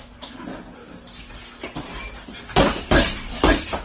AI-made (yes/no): no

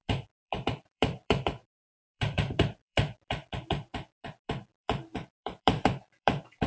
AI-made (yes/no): yes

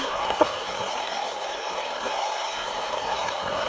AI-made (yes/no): yes